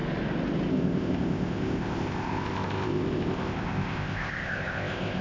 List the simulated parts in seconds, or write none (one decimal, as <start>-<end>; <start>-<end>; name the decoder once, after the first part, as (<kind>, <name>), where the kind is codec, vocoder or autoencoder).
0.7-5.2 (codec, ZipCodec)